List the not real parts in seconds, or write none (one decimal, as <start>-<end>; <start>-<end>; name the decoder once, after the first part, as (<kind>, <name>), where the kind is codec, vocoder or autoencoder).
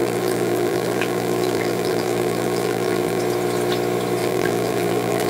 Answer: 0.0-3.2 (vocoder, BigVGAN v2); 4.2-5.3